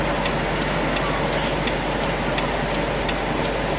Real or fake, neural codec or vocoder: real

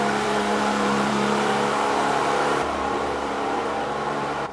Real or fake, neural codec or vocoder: fake, vocoder, BigVGAN v2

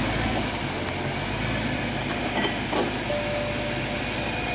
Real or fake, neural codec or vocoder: real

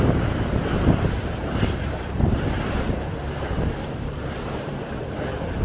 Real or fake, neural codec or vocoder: fake, vocoder, BigVGAN v2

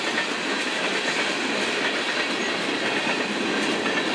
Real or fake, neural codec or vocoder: real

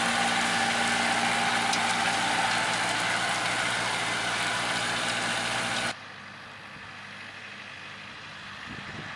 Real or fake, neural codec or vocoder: real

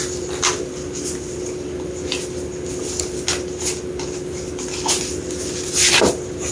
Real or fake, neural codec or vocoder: real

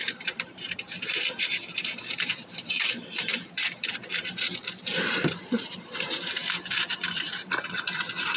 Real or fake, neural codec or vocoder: fake, vocoder, BigVGAN v2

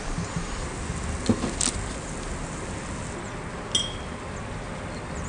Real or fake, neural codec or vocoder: real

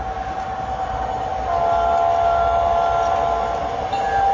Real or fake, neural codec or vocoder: real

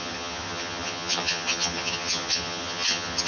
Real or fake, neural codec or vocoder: fake, vocoder, HiFi-GAN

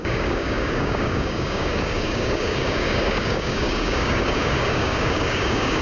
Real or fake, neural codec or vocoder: fake, codec, DAC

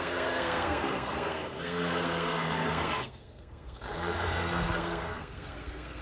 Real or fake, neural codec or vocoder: fake, codec, SNAC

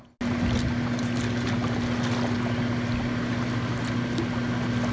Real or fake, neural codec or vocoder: real